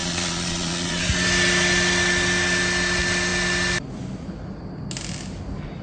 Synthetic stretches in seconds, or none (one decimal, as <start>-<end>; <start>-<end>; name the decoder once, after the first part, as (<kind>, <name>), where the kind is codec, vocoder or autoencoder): 0.0-1.0 (vocoder, Vocos)